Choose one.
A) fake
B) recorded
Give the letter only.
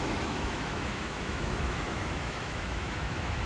A